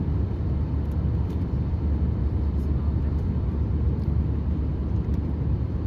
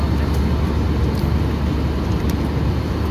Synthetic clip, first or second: first